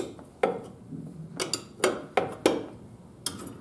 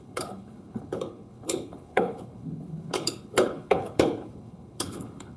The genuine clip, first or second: first